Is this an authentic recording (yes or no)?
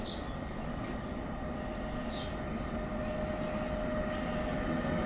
yes